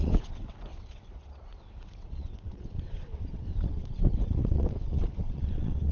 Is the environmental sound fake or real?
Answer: fake